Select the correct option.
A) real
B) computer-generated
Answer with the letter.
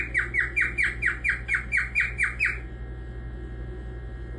A